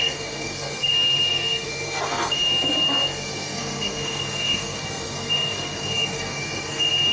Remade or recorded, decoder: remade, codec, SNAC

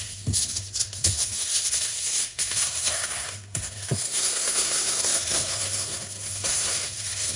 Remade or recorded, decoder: remade, codec, SNAC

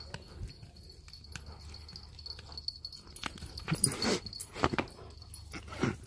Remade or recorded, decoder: recorded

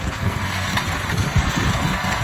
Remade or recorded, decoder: remade, codec, SNAC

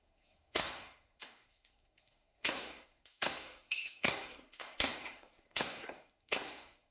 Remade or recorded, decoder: remade, codec, SNAC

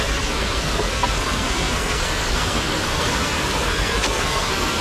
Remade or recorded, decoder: remade, codec, SNAC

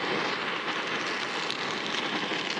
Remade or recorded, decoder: recorded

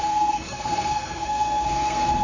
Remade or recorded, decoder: remade, codec, SNAC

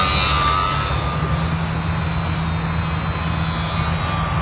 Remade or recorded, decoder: recorded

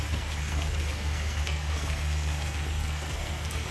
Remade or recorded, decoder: remade, codec, SNAC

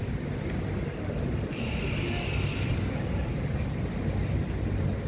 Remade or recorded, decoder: recorded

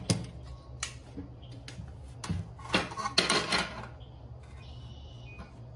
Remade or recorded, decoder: recorded